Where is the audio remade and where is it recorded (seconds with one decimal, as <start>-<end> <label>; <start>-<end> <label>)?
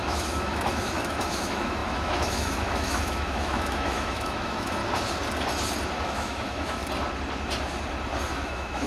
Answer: 0.0-4.8 remade; 4.8-6.0 recorded; 6.0-6.8 remade; 6.8-8.3 recorded; 8.3-8.9 remade